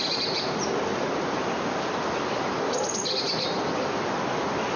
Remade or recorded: recorded